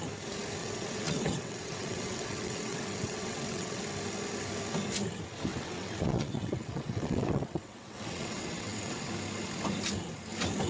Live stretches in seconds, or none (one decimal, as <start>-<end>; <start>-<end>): 0.0-0.6; 3.8-5.5; 9.1-10.7